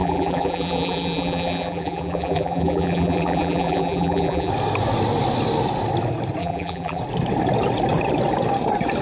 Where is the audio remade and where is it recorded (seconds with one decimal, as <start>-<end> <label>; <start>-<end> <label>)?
0.0-4.5 remade; 4.5-6.4 recorded; 6.4-7.0 remade; 7.0-9.0 recorded